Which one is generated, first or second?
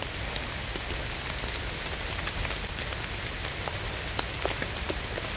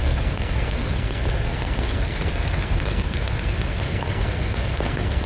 second